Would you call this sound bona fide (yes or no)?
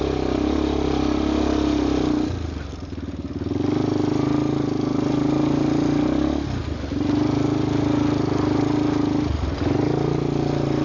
yes